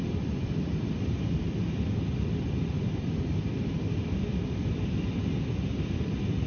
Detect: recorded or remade remade